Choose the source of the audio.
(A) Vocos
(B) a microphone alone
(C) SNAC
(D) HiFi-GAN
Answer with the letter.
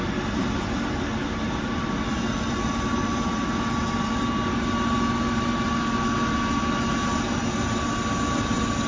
B